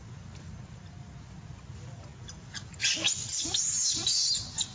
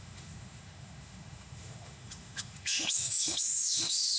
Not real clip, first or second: second